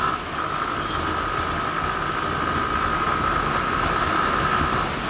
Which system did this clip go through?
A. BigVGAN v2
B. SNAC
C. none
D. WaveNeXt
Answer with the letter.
C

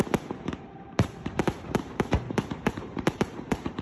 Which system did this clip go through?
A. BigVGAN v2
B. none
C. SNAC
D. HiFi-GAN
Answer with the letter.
A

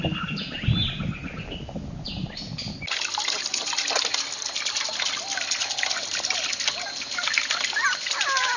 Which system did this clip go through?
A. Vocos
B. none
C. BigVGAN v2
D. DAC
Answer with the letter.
B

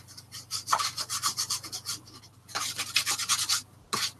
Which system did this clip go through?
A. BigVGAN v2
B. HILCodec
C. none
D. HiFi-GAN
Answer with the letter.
C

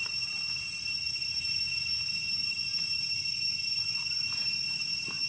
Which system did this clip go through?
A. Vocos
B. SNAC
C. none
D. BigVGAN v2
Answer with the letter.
C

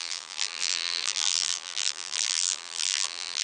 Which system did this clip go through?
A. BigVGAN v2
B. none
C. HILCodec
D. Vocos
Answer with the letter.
A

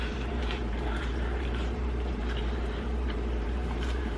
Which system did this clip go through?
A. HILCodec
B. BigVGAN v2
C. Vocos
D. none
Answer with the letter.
B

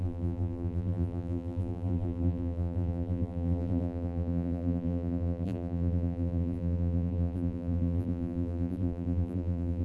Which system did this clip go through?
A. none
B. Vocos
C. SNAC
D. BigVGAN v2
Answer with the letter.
D